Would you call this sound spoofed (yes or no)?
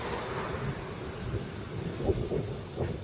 no